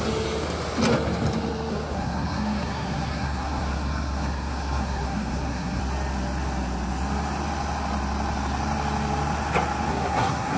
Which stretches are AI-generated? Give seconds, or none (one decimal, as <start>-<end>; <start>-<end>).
1.7-5.8; 9.9-10.6